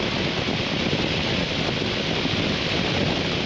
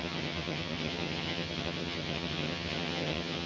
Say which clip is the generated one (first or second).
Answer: second